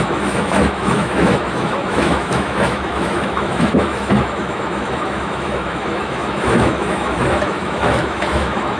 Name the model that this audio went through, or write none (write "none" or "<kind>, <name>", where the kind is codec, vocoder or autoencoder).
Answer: autoencoder, DAC-VAE